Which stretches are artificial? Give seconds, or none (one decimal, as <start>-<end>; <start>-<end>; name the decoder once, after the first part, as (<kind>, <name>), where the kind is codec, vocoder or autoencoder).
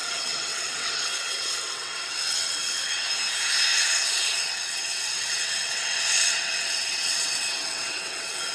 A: 0.0-3.1 (vocoder, WaveNeXt); 3.7-8.5